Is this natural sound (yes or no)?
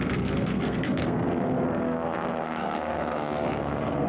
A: no